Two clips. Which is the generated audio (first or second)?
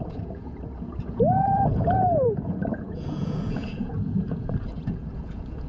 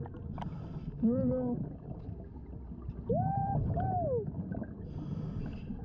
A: first